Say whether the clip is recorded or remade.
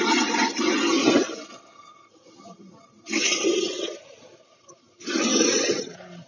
recorded